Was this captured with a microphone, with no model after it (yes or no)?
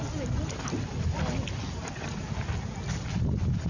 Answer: yes